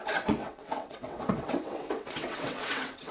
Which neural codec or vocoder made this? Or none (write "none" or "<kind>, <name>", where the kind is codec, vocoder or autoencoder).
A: vocoder, WaveNeXt